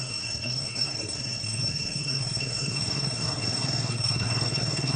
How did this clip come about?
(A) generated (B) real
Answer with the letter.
A